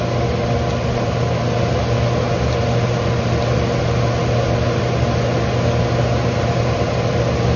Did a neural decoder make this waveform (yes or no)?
no